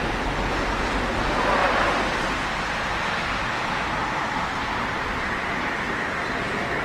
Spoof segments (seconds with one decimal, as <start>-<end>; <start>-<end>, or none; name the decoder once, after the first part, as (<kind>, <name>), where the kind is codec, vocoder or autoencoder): none